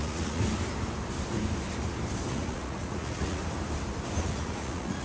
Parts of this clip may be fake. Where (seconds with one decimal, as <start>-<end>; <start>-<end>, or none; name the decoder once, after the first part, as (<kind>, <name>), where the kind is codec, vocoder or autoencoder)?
0.0-0.4 (vocoder, Vocos); 2.3-3.4; 4.2-5.0